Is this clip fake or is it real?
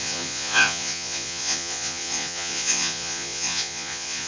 fake